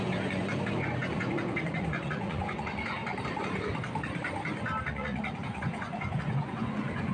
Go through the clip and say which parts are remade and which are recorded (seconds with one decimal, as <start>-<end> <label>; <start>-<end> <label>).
0.0-3.0 remade; 3.0-4.9 recorded; 4.9-7.1 remade